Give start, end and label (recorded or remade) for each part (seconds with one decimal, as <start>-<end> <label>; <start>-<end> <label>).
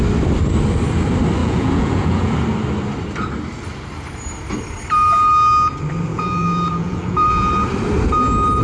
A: 0.0-1.4 recorded; 1.4-2.3 remade; 2.3-6.1 recorded; 6.1-7.5 remade; 7.5-8.6 recorded